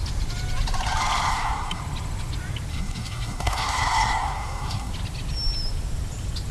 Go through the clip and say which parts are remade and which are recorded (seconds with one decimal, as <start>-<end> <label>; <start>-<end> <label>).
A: 0.0-1.3 recorded; 1.3-1.8 remade; 1.8-2.7 recorded; 2.7-4.9 remade; 4.9-6.5 recorded